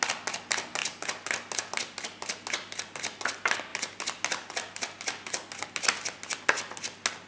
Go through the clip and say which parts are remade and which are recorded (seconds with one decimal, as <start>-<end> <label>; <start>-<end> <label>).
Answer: 0.0-7.3 recorded